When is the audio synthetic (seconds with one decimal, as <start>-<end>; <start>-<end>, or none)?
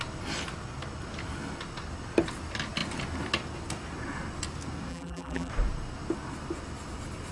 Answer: 4.9-5.5